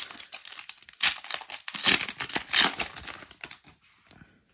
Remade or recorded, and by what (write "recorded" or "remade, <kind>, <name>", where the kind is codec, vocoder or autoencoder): recorded